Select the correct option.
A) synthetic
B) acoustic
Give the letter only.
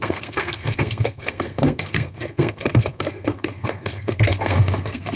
A